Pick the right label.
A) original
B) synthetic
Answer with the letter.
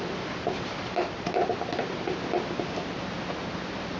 A